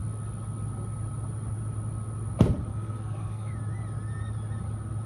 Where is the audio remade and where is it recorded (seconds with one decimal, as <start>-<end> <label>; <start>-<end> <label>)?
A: 0.0-2.7 recorded; 2.7-3.5 remade; 3.5-5.1 recorded